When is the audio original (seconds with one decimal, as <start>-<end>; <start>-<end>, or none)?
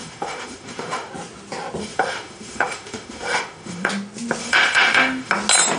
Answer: 1.1-1.8; 3.9-4.4; 5.3-5.8